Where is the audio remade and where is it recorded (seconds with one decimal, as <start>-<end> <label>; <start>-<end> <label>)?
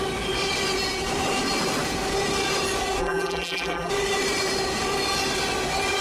0.0-3.0 recorded; 3.0-3.9 remade; 3.9-6.0 recorded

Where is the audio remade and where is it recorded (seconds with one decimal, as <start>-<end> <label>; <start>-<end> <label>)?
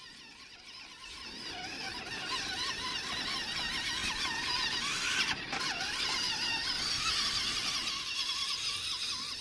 0.0-1.9 recorded; 1.9-3.1 remade; 3.1-4.0 recorded; 4.0-7.1 remade; 7.1-9.4 recorded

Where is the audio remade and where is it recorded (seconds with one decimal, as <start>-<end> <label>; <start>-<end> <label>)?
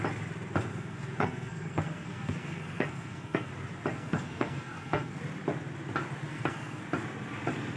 0.0-0.7 recorded; 0.7-3.5 remade; 3.5-3.9 recorded; 3.9-5.2 remade; 5.2-6.3 recorded; 6.3-6.8 remade; 6.8-7.8 recorded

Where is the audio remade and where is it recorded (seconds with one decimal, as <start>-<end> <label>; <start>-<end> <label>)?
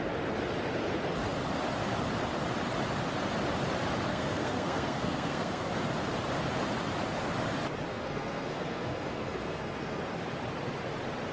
0.0-4.1 recorded; 4.1-5.7 remade; 5.7-7.9 recorded; 7.9-10.0 remade; 10.0-11.3 recorded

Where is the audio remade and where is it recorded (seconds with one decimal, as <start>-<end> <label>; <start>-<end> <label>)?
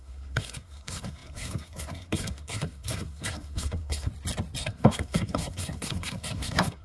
0.0-4.1 remade; 4.1-4.6 recorded; 4.6-6.8 remade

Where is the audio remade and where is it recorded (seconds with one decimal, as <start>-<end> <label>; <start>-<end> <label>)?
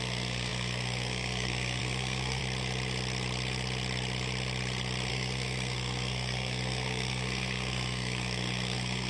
0.0-2.4 remade; 2.4-5.1 recorded; 5.1-9.1 remade